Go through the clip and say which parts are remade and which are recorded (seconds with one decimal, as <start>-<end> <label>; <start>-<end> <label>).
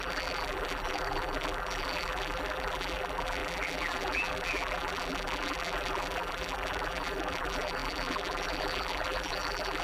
0.0-9.8 remade